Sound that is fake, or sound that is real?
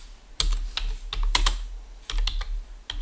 real